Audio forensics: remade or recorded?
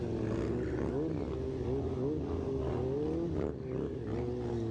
recorded